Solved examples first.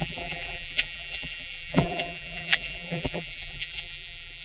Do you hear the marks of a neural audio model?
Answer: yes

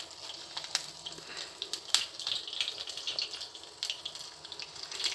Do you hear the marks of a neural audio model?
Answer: no